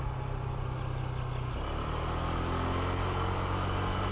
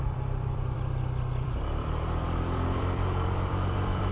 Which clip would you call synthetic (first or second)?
second